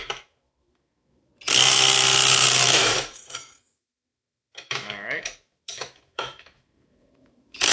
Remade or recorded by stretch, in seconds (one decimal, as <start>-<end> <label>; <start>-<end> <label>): 0.0-1.3 remade; 1.3-2.5 recorded; 2.5-7.7 remade